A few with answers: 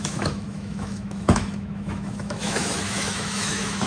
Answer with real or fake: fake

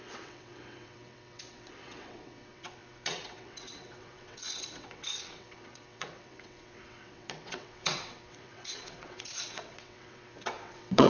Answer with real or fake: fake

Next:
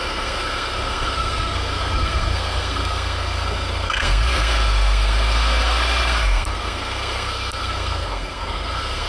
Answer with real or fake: fake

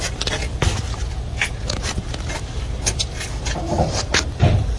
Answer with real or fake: real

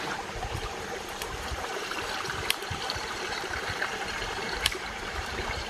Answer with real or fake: fake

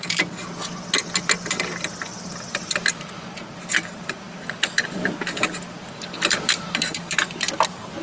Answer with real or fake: real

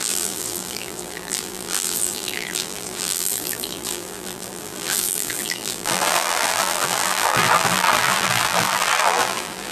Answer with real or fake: fake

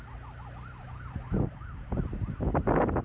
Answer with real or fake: real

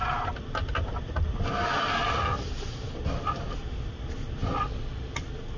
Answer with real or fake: real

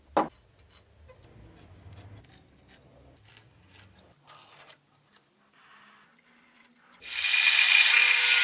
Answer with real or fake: real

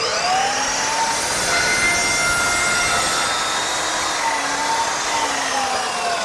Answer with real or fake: real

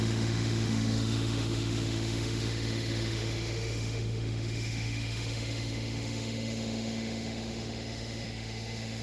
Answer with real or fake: fake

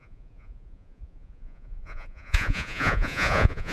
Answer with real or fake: fake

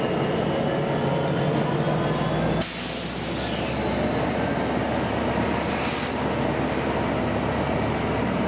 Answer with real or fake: real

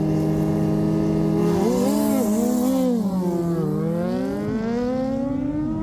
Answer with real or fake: real